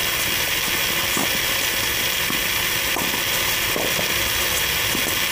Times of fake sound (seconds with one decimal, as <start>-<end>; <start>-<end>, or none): 0.0-0.6; 1.2-2.6